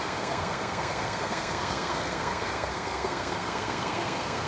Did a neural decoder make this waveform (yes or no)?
yes